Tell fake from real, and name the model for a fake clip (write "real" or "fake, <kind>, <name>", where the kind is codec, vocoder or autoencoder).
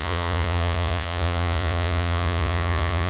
fake, vocoder, Vocos